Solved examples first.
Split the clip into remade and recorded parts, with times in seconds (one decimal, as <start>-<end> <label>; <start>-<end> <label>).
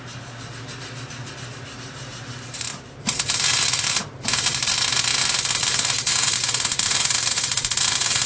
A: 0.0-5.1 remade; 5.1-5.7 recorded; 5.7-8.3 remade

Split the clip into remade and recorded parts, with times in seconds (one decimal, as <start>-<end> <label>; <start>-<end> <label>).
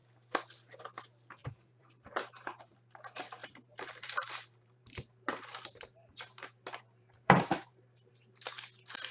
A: 0.0-1.4 recorded; 1.4-2.7 remade; 2.7-3.4 recorded; 3.4-8.1 remade; 8.1-9.1 recorded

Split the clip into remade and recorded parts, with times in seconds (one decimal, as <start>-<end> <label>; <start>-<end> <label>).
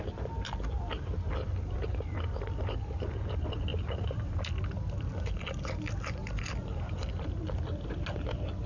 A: 0.0-3.7 recorded; 3.7-4.4 remade; 4.4-6.2 recorded; 6.2-7.2 remade; 7.2-8.7 recorded